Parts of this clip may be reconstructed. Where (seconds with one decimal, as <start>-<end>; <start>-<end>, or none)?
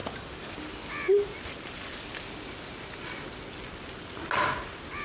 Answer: none